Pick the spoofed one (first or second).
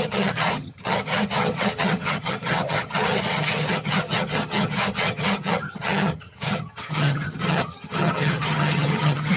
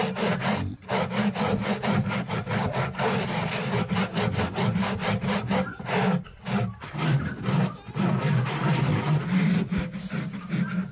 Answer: first